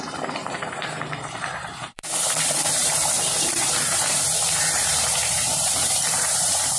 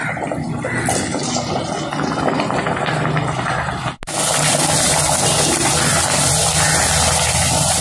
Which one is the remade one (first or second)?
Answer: first